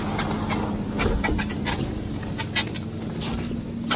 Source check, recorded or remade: recorded